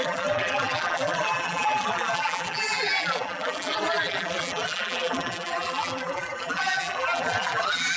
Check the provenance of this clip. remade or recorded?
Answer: remade